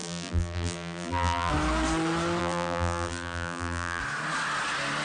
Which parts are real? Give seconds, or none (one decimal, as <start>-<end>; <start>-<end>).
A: 1.5-2.4; 4.0-5.0